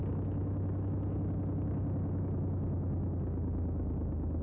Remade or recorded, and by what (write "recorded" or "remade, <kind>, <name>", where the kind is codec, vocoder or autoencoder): recorded